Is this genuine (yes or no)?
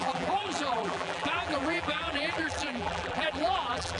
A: no